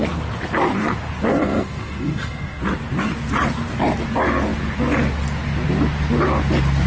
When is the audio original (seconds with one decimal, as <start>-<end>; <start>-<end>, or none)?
0.0-1.3; 2.6-6.9